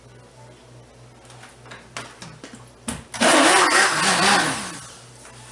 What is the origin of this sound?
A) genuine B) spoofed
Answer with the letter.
A